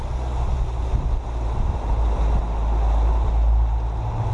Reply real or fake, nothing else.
real